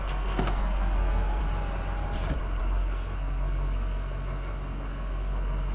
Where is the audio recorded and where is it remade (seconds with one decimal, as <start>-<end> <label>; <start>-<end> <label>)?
0.0-1.4 remade; 1.4-2.6 recorded; 2.6-5.7 remade